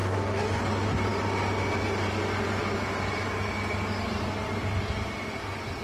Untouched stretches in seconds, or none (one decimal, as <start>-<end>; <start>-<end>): 0.6-5.8